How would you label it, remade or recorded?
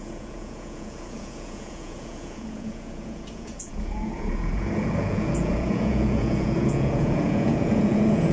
remade